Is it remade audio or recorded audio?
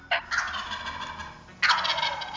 recorded